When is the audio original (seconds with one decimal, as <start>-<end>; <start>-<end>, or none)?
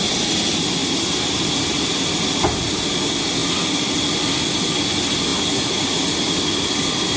0.0-7.2